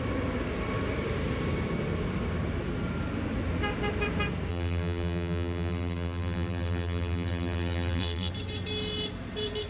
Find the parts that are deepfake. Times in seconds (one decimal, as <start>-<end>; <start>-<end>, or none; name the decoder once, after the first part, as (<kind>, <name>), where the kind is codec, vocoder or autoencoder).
4.5-8.3 (vocoder, BigVGAN v2)